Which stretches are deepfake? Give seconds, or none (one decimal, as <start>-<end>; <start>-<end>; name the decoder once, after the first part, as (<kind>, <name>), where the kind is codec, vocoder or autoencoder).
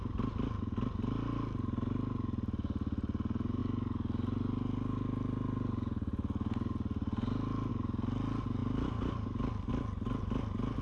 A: none